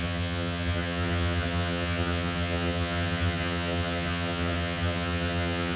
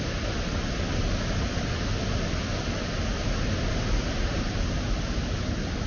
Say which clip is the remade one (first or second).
first